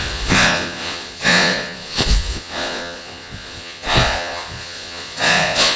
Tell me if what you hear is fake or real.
fake